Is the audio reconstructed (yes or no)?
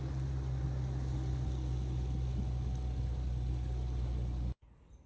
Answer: no